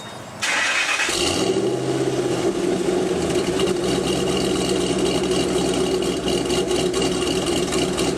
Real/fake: real